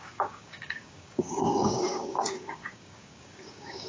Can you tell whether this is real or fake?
fake